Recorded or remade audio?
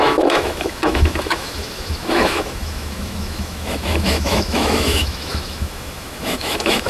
remade